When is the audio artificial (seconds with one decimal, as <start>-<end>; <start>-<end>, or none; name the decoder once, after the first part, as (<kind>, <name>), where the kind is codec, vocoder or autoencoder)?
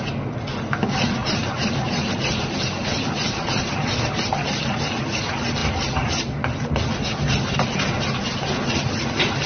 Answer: 1.2-4.8 (vocoder, BigVGAN v2)